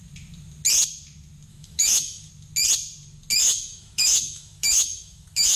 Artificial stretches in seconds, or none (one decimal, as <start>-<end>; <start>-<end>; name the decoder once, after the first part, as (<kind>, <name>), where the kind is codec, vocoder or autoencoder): 1.5-2.3 (autoencoder, DAC-VAE); 3.4-5.6